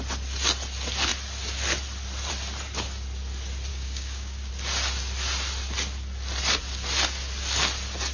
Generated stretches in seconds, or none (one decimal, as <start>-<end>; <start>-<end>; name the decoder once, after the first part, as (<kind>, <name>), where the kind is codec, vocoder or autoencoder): 3.7-4.5 (codec, DAC)